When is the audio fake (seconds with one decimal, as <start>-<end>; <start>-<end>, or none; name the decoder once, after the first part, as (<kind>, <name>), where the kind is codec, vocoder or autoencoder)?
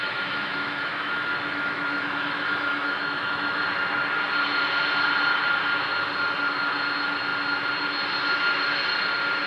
0.0-3.6 (autoencoder, DAC-VAE)